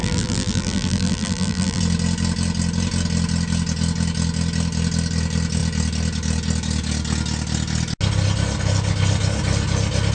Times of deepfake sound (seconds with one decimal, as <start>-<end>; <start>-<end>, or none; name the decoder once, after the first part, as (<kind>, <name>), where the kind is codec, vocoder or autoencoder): 0.0-1.8 (vocoder, BigVGAN v2)